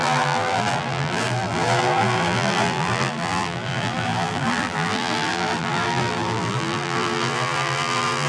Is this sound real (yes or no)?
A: no